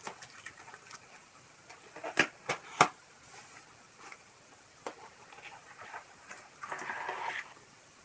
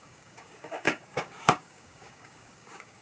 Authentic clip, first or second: first